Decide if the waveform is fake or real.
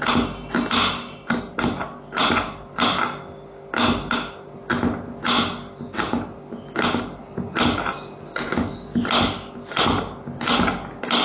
real